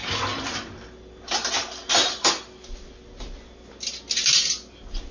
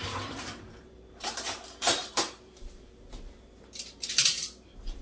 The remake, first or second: second